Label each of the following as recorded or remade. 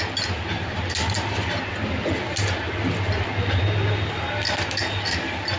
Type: recorded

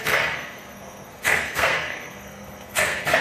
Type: remade